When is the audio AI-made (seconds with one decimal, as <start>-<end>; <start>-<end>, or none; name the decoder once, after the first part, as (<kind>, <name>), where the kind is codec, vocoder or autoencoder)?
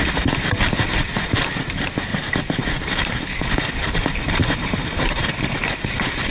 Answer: 2.1-3.2 (vocoder, BigVGAN v2); 4.4-5.3